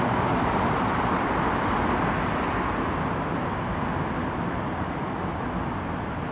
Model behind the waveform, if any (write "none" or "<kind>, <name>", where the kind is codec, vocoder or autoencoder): none